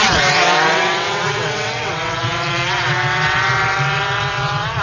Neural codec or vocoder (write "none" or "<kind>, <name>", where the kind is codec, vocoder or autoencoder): vocoder, WaveNeXt